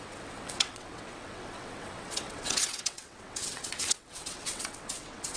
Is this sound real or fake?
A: fake